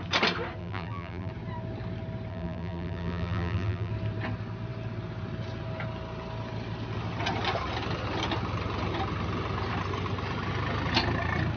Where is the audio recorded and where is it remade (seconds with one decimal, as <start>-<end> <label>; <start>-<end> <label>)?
0.0-0.6 recorded; 0.6-1.3 remade; 1.3-2.3 recorded; 2.3-3.9 remade; 3.9-11.6 recorded